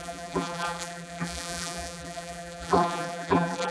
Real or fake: fake